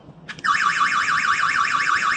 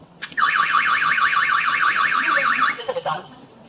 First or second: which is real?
first